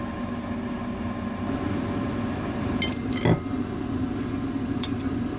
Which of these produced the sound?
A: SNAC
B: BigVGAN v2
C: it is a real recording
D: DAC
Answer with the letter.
C